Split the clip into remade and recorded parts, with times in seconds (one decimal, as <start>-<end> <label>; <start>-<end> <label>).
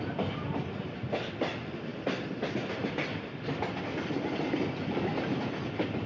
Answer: 0.0-6.1 recorded